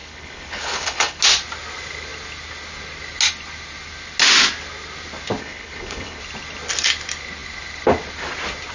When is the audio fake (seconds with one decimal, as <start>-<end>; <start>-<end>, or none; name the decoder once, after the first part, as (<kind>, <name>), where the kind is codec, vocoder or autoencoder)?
0.0-1.2 (codec, HILCodec); 5.4-6.2